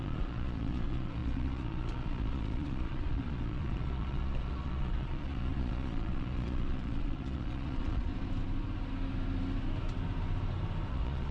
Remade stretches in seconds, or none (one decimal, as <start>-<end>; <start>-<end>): 0.0-8.1; 10.9-11.3